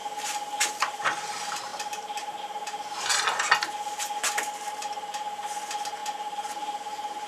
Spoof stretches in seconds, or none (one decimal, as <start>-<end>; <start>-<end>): 0.7-3.1; 4.7-7.3